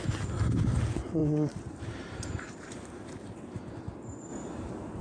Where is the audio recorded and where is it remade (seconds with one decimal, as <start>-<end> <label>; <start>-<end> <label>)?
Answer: 0.0-1.2 recorded; 1.2-3.7 remade; 3.7-5.0 recorded